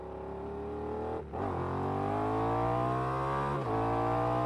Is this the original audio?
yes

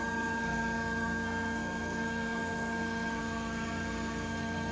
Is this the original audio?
no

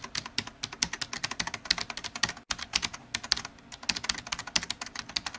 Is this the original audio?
yes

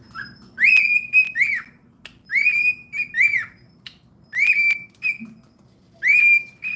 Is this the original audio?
yes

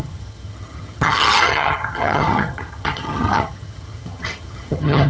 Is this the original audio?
no